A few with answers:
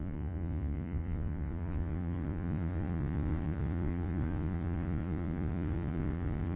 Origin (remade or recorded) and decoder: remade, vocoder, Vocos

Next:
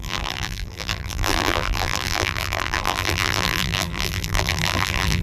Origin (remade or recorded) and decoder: remade, vocoder, BigVGAN v2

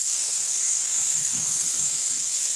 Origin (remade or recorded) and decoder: remade, codec, SNAC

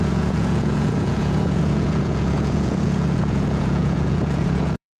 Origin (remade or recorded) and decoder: remade, vocoder, Vocos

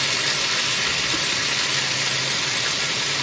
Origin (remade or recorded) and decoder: recorded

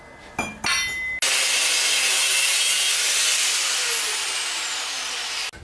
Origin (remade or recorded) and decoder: recorded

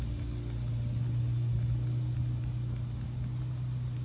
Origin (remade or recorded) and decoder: recorded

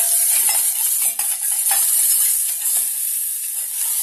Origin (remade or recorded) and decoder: recorded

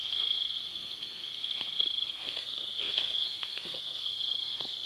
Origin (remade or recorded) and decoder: remade, codec, SNAC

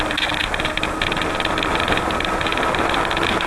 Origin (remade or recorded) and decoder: recorded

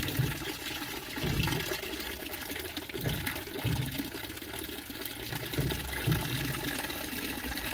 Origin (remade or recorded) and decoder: recorded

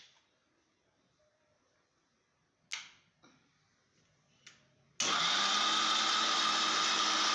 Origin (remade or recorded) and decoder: recorded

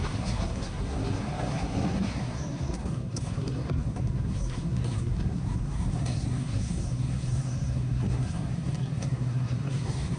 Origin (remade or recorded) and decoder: remade, codec, SNAC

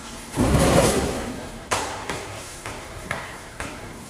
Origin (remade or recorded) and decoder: remade, codec, SNAC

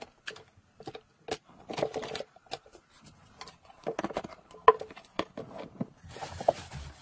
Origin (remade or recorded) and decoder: recorded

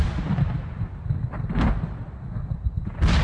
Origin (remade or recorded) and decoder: recorded